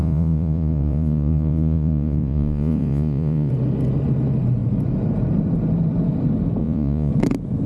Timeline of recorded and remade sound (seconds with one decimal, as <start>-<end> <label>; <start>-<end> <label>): 0.0-3.5 remade; 3.5-6.6 recorded; 6.6-7.1 remade; 7.1-7.7 recorded